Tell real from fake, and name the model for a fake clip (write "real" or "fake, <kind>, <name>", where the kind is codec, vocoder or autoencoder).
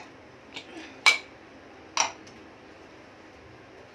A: real